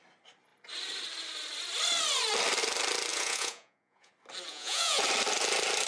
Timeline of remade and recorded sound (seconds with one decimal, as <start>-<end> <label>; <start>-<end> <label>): 0.0-3.1 recorded; 3.1-4.1 remade; 4.1-4.5 recorded; 4.5-5.0 remade; 5.0-5.9 recorded